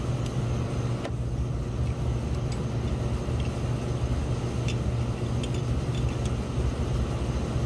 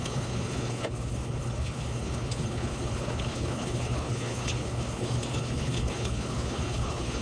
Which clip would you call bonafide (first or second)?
first